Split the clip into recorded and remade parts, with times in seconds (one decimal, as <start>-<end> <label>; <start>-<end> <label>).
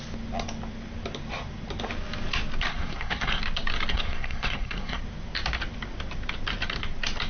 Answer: 0.0-2.7 recorded; 2.7-3.4 remade; 3.4-3.9 recorded; 3.9-5.0 remade; 5.0-7.3 recorded